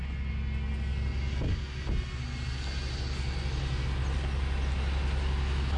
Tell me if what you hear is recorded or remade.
recorded